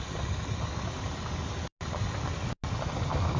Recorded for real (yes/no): yes